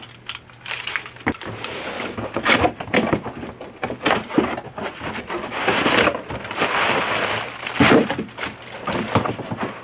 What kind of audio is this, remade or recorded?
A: recorded